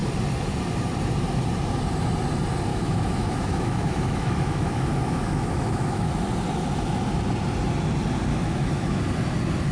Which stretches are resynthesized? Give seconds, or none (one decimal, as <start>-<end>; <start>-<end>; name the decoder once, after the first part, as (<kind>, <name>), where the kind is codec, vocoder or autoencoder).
2.7-6.1 (autoencoder, DAC-VAE); 8.3-9.0